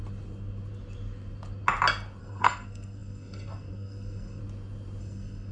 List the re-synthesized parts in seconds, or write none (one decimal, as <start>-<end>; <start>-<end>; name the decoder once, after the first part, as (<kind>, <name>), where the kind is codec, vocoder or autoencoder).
2.2-4.4 (codec, SNAC); 5.0-5.5